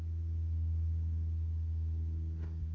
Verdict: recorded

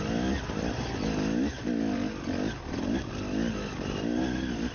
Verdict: recorded